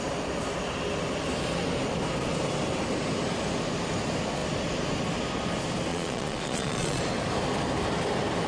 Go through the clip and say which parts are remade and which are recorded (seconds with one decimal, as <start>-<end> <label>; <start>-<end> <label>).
0.0-5.9 recorded; 5.9-7.0 remade; 7.0-8.5 recorded